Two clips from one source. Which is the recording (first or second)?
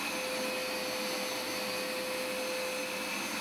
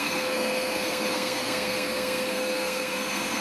first